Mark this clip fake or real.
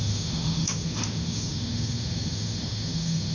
fake